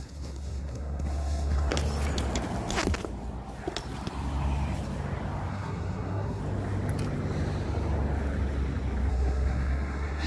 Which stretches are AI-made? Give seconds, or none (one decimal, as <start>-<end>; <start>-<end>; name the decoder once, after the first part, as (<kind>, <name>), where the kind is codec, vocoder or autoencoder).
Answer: 0.0-1.7 (codec, SNAC); 5.5-6.4; 9.1-10.3